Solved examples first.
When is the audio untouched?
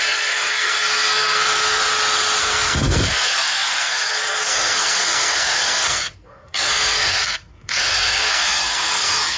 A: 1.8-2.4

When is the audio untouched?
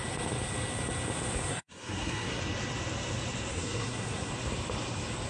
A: 0.0-1.5; 2.4-3.5; 4.3-5.3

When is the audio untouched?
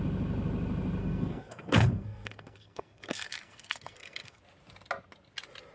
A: 0.0-1.0; 4.4-5.7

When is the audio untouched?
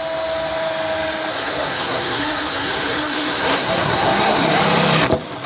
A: 0.0-1.3; 4.6-5.5